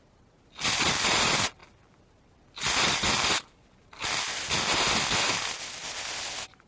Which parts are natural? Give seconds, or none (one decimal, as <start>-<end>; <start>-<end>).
0.0-6.7